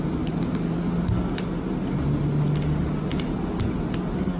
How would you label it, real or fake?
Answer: real